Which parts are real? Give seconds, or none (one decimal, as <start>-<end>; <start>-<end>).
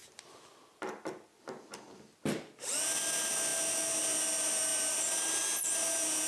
0.0-6.3